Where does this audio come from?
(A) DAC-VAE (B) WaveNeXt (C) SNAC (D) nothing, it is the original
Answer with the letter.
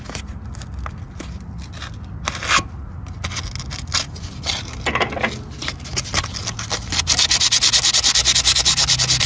D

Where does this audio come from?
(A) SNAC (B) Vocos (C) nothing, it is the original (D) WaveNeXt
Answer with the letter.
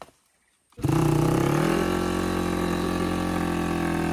C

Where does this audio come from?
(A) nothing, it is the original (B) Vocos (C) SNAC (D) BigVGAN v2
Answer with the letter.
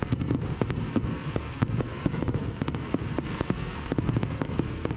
C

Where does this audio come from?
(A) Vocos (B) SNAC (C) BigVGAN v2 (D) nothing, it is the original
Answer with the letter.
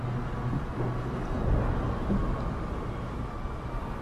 D